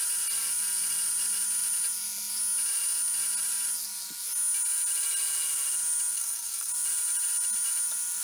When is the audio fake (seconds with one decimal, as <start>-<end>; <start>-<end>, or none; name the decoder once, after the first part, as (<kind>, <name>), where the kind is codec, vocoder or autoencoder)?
6.1-6.7 (codec, SNAC)